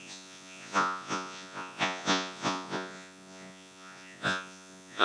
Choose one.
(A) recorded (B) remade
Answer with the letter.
B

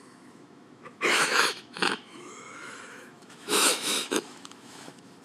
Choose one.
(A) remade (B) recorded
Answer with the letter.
A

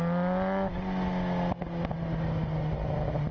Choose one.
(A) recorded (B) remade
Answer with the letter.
A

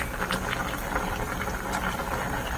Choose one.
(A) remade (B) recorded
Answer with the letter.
B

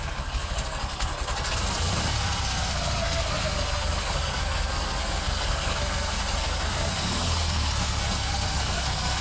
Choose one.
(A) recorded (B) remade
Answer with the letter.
B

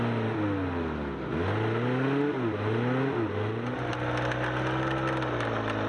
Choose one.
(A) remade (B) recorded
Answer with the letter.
B